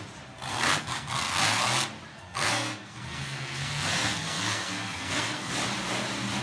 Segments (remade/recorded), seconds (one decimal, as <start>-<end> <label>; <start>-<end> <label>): 0.0-0.5 recorded; 0.5-1.6 remade; 1.6-2.1 recorded; 2.1-5.5 remade; 5.5-6.4 recorded